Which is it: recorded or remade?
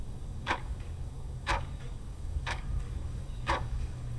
remade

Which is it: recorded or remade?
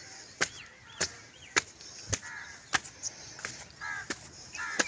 recorded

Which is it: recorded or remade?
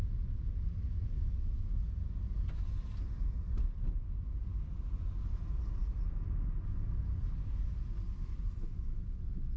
recorded